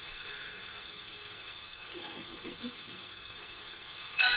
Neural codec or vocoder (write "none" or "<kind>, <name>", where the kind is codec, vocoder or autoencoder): codec, SNAC